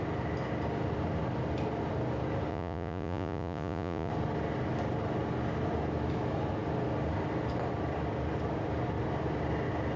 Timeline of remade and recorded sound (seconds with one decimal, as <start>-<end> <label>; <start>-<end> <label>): 0.0-2.5 recorded; 2.5-4.1 remade; 4.1-10.0 recorded